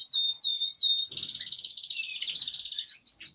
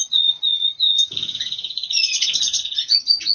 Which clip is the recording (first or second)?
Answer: first